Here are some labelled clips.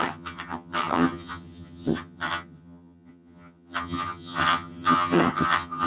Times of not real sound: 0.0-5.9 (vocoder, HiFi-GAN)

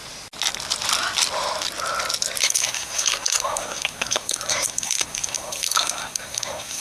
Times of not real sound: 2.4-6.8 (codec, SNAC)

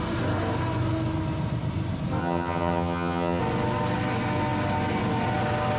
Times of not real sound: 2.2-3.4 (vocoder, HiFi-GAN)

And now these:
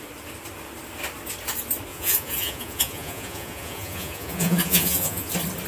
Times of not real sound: 1.9-5.3 (vocoder, Vocos)